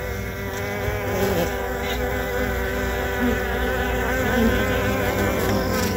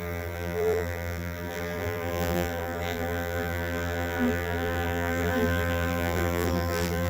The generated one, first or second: second